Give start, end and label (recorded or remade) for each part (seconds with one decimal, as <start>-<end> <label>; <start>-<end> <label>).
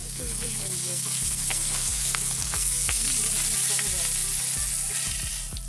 0.0-3.1 remade; 3.1-5.7 recorded